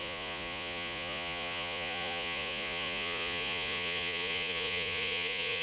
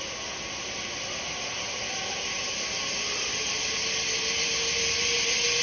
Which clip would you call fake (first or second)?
first